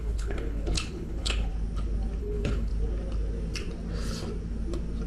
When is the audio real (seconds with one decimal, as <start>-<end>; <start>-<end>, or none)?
1.5-2.2; 2.7-5.1